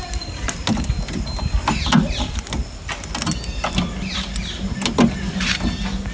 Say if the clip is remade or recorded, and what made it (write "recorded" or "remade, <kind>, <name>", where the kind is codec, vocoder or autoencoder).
recorded